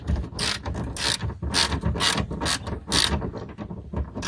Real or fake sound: real